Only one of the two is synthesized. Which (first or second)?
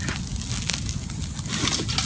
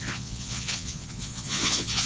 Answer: second